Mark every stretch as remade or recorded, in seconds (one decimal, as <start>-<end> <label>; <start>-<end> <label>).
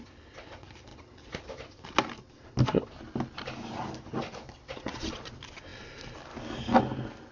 0.0-7.3 recorded